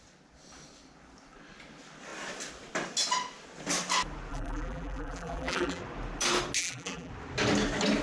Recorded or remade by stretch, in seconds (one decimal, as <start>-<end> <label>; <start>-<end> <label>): 0.0-4.3 recorded; 4.3-5.8 remade; 5.8-6.6 recorded; 6.6-7.1 remade; 7.1-8.0 recorded